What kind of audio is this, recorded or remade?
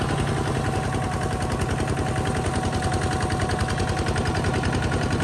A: recorded